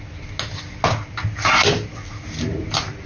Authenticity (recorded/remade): recorded